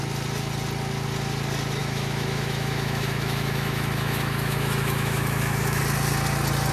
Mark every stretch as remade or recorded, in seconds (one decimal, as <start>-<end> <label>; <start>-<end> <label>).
0.0-1.8 recorded; 1.8-5.8 remade; 5.8-6.7 recorded